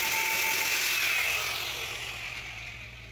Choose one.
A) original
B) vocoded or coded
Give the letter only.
A